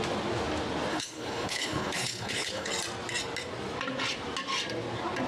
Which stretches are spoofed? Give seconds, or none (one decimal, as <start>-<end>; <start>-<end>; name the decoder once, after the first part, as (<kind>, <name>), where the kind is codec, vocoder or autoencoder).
0.9-2.7 (codec, HILCodec)